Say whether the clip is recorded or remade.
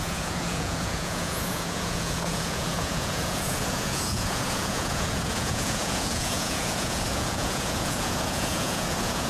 remade